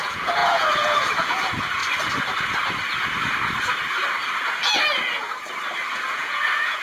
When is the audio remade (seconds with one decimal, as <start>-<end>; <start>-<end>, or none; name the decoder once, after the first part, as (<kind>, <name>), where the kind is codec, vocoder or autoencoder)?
0.0-1.8 (vocoder, Vocos); 5.9-6.8